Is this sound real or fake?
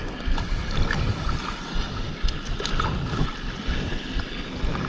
real